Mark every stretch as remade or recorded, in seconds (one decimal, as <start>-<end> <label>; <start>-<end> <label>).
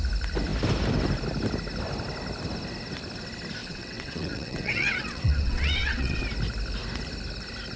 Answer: 0.0-3.6 recorded; 3.6-6.2 remade; 6.2-7.8 recorded